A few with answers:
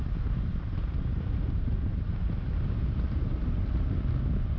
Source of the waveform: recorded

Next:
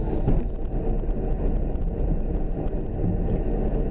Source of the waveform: recorded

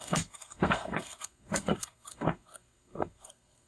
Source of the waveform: remade